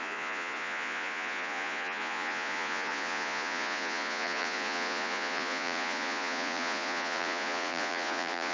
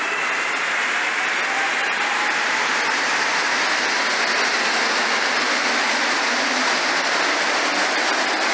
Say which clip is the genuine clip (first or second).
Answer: second